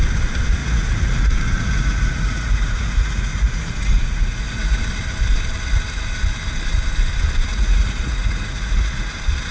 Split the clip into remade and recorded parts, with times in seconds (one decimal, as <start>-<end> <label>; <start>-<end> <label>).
0.0-0.6 recorded; 0.6-4.8 remade; 4.8-7.5 recorded; 7.5-9.1 remade; 9.1-9.5 recorded